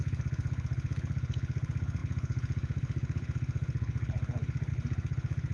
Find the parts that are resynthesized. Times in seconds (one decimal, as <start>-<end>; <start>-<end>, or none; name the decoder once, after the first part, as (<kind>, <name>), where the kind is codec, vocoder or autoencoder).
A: 0.0-5.5 (codec, HILCodec)